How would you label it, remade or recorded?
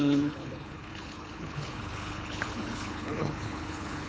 remade